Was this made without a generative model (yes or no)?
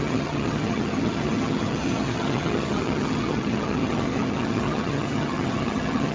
no